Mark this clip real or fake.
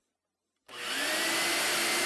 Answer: real